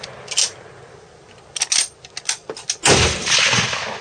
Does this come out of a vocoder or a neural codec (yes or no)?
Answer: no